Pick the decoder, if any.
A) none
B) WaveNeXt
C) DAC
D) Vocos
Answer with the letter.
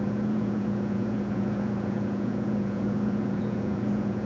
D